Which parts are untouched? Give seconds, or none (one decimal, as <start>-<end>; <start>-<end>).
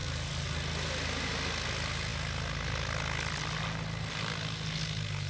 0.0-5.3